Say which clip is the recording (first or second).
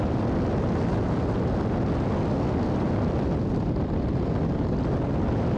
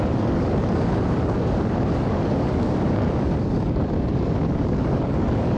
first